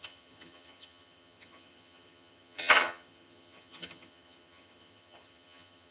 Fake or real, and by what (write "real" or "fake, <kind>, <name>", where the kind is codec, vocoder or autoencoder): fake, vocoder, HiFi-GAN